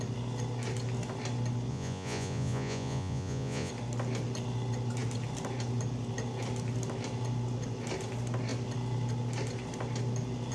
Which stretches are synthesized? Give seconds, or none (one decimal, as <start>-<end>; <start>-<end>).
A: 1.7-3.7